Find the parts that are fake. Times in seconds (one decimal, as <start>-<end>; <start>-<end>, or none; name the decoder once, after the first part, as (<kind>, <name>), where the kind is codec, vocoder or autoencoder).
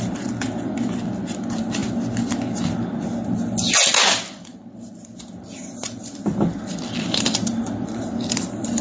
0.0-1.8 (vocoder, BigVGAN v2); 4.1-8.8